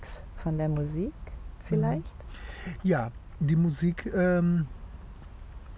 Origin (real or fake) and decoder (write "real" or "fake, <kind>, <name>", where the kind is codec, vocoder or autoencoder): real